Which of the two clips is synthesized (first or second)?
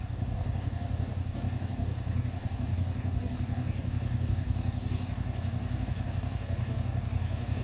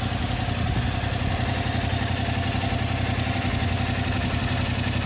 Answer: first